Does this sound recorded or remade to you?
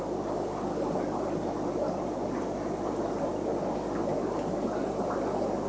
recorded